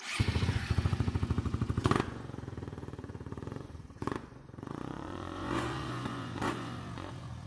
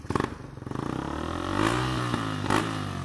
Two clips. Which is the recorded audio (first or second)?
second